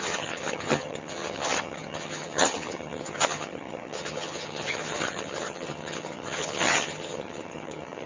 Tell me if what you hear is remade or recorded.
remade